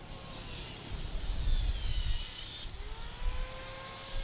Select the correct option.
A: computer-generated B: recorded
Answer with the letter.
B